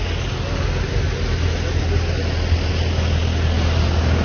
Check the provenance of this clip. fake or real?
real